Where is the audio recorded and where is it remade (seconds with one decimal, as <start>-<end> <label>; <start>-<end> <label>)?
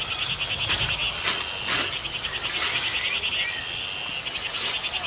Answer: 0.0-5.1 recorded